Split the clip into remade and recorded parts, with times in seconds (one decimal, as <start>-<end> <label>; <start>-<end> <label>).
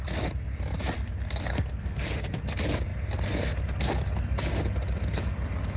0.0-1.5 recorded; 1.5-2.4 remade; 2.4-5.8 recorded